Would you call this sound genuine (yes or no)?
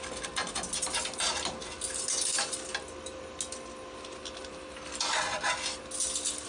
yes